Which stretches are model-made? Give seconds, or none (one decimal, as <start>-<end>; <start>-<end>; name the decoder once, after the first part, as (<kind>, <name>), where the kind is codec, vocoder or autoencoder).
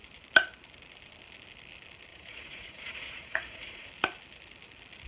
2.1-3.9 (vocoder, Vocos)